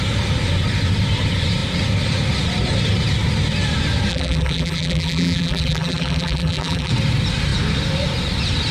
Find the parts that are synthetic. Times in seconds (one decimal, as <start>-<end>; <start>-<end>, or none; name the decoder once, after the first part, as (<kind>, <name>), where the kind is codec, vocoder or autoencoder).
4.1-6.9 (vocoder, BigVGAN v2)